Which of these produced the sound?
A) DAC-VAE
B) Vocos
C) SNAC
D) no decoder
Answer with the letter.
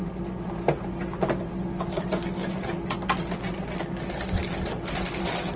D